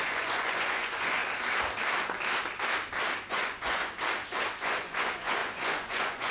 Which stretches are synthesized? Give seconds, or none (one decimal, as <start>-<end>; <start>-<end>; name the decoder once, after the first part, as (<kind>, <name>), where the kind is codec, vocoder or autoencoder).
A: 0.0-1.2 (vocoder, Vocos); 3.3-3.8; 4.6-6.3